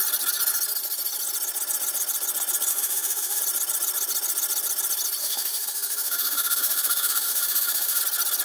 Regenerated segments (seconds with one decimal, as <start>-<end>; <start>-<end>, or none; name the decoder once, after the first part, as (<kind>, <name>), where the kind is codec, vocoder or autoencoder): 2.7-3.4 (autoencoder, DAC-VAE); 5.2-8.0